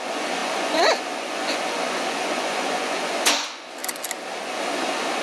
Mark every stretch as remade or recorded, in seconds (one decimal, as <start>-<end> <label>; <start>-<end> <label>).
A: 0.0-3.8 remade; 3.8-4.4 recorded; 4.4-5.2 remade